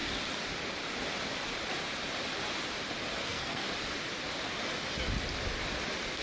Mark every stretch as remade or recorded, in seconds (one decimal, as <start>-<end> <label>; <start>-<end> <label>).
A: 0.0-3.2 recorded; 3.2-3.7 remade; 3.7-6.2 recorded